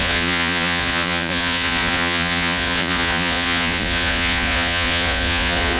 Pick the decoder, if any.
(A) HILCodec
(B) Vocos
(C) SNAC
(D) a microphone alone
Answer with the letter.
B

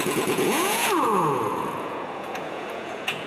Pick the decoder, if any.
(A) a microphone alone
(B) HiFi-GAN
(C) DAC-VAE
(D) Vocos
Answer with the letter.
D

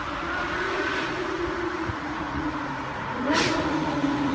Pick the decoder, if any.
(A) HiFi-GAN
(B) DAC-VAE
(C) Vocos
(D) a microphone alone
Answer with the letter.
C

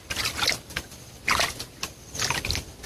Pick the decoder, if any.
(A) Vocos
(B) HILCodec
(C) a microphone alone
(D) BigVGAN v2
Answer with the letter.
C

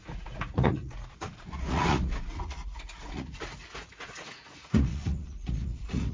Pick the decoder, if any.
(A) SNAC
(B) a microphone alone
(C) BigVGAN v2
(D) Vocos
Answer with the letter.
D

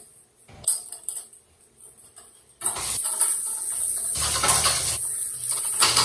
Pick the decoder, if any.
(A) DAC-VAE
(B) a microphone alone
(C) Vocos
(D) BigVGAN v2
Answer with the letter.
B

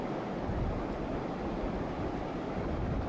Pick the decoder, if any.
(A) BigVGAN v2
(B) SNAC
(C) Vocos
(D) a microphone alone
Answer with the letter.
D